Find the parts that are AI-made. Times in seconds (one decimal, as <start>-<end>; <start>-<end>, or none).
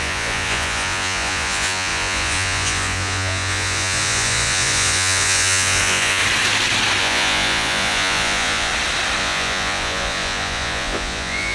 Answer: 0.0-6.2; 7.0-8.7; 9.2-11.5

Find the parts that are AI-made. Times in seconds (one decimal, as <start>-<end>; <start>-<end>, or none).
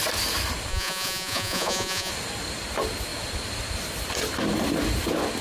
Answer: 0.7-2.1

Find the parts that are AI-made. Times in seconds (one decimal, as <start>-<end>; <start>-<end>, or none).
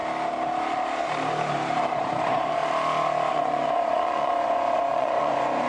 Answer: 2.2-2.6; 3.3-5.7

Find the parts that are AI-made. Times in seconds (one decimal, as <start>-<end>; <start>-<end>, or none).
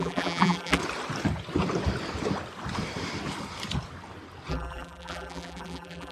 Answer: 0.0-0.8; 4.5-6.1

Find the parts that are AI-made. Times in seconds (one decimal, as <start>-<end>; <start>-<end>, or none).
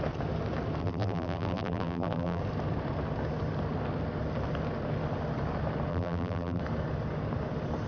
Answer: 0.8-2.4; 5.9-6.6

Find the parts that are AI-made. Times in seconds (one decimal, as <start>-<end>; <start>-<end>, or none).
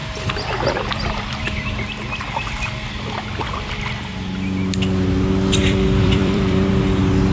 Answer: 0.0-1.4; 5.6-6.7